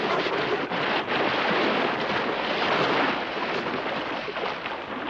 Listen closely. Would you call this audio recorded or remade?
recorded